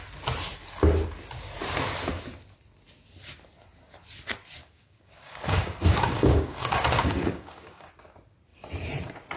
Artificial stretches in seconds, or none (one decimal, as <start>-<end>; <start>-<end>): 4.6-7.9